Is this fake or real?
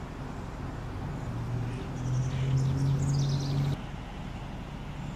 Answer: real